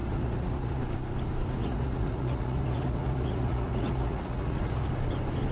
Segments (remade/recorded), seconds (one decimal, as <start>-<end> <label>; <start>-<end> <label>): 0.0-0.8 remade; 0.8-1.6 recorded; 1.6-4.9 remade; 4.9-5.5 recorded